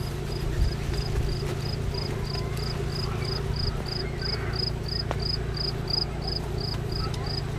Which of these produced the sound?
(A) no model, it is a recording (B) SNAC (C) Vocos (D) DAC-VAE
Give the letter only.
A